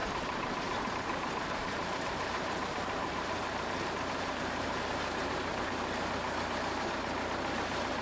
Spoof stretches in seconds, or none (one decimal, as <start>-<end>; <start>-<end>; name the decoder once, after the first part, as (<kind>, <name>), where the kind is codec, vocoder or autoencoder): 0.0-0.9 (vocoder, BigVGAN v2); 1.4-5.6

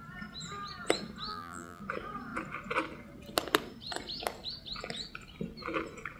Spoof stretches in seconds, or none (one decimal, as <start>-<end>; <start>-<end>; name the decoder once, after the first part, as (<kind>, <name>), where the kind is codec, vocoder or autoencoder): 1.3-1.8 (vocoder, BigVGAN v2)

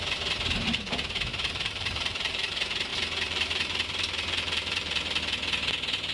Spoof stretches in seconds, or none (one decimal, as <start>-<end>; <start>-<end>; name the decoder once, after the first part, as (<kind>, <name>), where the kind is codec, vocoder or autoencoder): 1.3-2.5 (vocoder, BigVGAN v2); 2.9-5.2

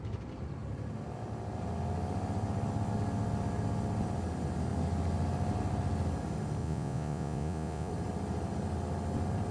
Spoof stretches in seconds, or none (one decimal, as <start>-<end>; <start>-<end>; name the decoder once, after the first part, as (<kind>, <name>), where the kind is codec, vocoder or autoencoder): 6.6-7.9 (vocoder, Vocos)